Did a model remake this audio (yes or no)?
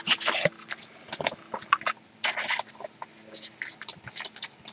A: no